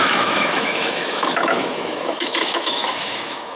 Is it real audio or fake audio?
fake